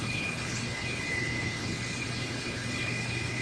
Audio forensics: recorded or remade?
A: remade